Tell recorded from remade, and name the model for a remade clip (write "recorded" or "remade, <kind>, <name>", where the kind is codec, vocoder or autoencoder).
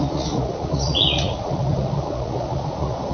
remade, vocoder, Vocos